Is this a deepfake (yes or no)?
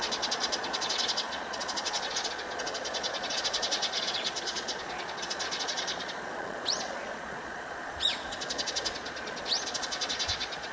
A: yes